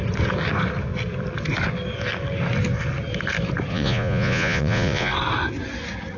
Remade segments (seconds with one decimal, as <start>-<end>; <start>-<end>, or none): 3.7-5.1